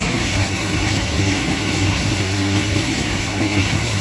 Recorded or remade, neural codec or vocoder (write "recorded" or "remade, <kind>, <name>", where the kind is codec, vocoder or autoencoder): remade, codec, SNAC